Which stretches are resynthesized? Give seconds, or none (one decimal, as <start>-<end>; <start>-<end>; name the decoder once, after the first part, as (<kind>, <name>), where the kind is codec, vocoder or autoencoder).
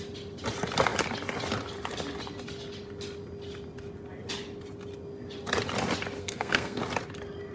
6.2-6.8 (codec, SNAC)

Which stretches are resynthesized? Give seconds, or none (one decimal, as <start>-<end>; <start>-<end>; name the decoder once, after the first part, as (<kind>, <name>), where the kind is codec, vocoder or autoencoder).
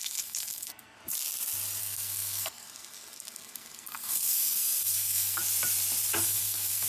0.0-1.0 (codec, SNAC); 1.8-5.4; 6.2-6.9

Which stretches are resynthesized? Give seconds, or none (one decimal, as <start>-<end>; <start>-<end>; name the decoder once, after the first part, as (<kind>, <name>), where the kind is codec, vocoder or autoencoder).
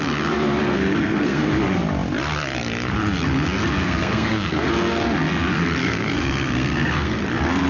0.7-1.5 (codec, SNAC); 3.8-4.7; 5.8-7.2